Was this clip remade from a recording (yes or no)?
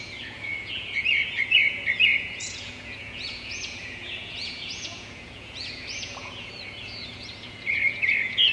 yes